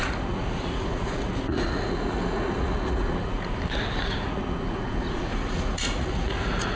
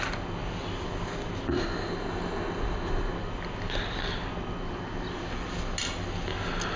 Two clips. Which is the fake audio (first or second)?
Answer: first